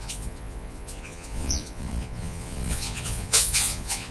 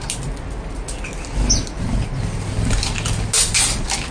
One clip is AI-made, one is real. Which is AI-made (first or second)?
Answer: first